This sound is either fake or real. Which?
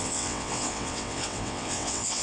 fake